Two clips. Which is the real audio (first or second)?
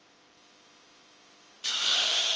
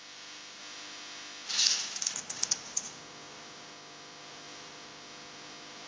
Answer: second